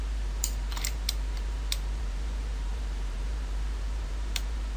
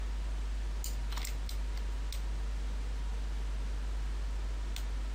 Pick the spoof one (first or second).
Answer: first